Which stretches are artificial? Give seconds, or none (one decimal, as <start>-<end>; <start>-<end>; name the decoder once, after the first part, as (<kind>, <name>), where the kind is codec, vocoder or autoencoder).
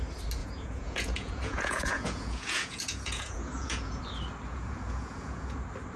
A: 0.4-4.0 (vocoder, Vocos); 4.5-5.6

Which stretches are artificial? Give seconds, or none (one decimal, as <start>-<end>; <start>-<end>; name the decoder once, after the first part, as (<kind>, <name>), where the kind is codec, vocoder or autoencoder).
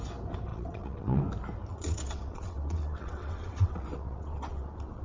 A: 0.5-1.2 (vocoder, WaveNeXt); 1.7-5.0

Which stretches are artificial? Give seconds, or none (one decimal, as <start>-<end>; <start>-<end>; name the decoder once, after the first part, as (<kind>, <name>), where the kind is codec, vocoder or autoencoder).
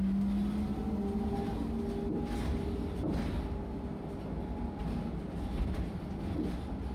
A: none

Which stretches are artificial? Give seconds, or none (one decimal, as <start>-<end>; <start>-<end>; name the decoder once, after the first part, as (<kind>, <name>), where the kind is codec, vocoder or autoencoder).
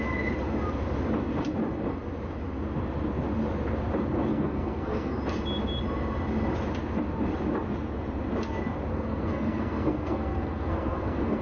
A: 4.3-5.2 (codec, SNAC); 8.9-11.4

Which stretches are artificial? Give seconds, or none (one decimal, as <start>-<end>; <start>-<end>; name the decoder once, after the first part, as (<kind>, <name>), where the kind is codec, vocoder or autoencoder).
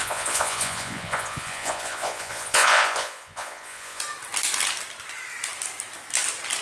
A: 0.0-4.0 (vocoder, Vocos)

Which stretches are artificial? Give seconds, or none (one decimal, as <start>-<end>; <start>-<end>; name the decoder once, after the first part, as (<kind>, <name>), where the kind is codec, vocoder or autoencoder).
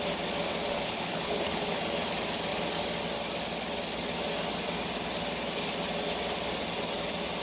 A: 0.7-1.8 (codec, HILCodec)